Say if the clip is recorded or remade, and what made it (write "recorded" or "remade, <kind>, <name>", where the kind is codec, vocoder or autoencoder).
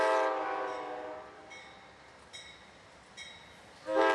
recorded